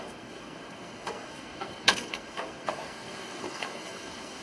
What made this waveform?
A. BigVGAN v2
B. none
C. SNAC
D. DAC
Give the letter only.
C